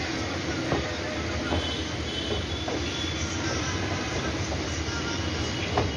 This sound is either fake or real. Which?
real